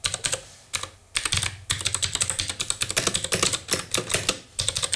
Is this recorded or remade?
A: recorded